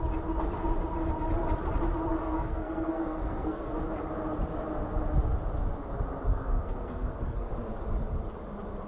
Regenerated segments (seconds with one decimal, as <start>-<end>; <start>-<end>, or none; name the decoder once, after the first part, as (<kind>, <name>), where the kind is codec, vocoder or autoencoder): 2.2-3.8 (codec, SNAC); 6.3-7.5